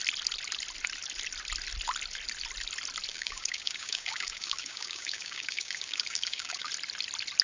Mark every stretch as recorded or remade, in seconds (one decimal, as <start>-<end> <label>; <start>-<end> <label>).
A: 0.0-3.1 recorded; 3.1-6.7 remade; 6.7-7.4 recorded